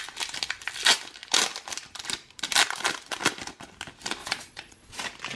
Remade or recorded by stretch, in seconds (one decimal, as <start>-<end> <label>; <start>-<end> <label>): 0.0-4.2 recorded; 4.2-5.0 remade; 5.0-5.4 recorded